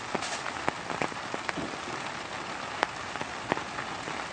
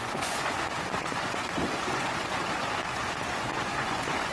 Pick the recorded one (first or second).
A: first